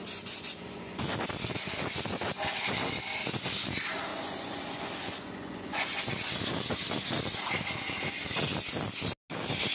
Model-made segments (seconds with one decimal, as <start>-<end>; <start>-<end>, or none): 0.0-1.0; 4.1-6.0